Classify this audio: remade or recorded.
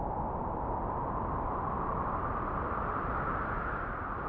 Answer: recorded